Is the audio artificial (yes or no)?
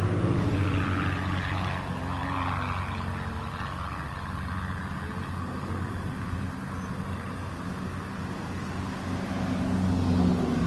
no